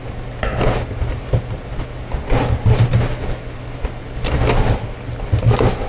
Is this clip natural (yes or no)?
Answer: yes